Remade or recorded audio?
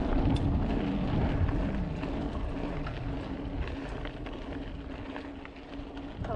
recorded